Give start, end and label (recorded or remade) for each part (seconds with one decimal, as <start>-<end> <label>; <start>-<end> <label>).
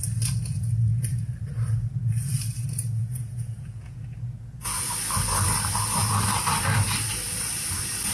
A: 0.0-3.0 recorded; 3.0-4.8 remade; 4.8-8.1 recorded